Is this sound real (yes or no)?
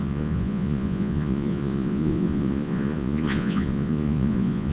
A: no